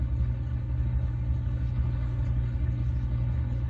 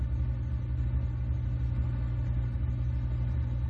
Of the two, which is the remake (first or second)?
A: first